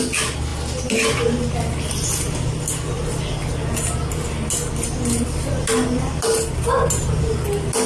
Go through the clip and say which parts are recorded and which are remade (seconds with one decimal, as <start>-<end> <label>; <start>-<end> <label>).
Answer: 0.0-5.6 recorded; 5.6-6.7 remade; 6.7-7.9 recorded